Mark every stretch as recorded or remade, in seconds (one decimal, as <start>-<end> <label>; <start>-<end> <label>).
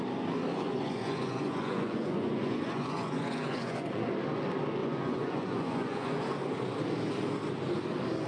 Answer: 0.0-0.5 recorded; 0.5-4.1 remade; 4.1-4.8 recorded; 4.8-6.2 remade; 6.2-8.3 recorded